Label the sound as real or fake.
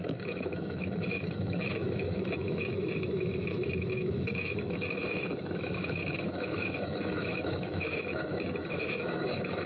fake